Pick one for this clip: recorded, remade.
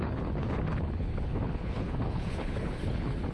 remade